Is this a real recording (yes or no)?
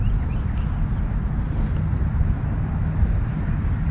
yes